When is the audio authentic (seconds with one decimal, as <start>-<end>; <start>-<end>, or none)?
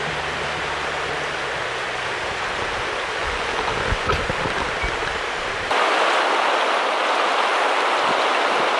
0.0-3.2; 4.1-8.8